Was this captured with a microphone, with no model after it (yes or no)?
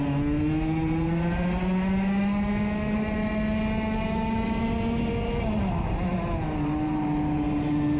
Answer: yes